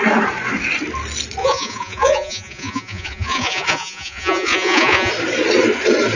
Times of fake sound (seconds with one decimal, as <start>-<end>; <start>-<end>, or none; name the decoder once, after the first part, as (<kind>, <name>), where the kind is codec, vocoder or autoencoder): 1.4-5.1 (vocoder, Vocos)